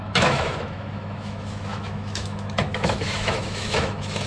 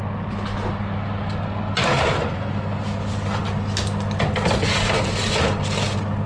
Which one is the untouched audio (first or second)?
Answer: second